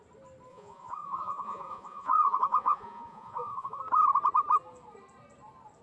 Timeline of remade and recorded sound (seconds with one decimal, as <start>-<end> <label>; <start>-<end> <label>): 0.0-0.5 recorded; 0.5-3.8 remade; 3.8-5.8 recorded